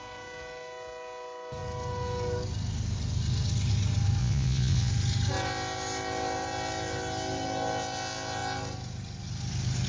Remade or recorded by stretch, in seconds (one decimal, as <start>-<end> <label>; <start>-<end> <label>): 0.0-4.2 recorded; 4.2-4.9 remade; 4.9-9.9 recorded